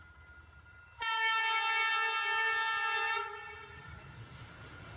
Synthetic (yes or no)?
no